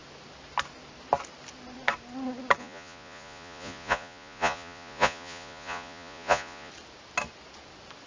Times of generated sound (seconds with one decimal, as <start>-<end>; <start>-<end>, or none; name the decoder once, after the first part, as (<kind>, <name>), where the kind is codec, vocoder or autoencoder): 2.6-6.7 (vocoder, Vocos)